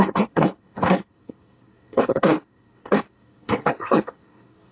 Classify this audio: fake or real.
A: fake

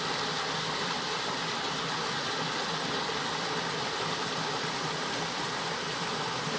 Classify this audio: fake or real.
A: real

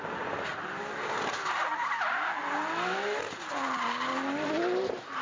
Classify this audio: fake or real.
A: real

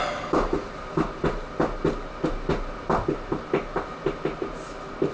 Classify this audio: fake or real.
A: real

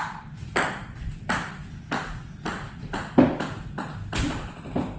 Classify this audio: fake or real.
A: real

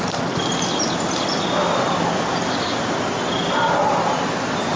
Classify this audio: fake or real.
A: real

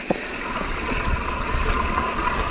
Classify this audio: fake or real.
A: fake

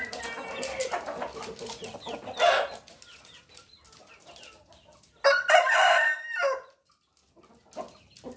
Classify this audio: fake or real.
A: real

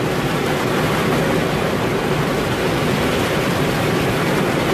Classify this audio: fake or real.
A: real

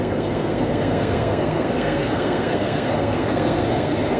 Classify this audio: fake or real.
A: fake